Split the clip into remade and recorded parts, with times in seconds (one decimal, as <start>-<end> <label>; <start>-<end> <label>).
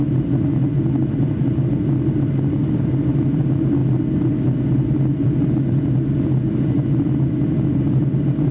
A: 0.0-8.5 recorded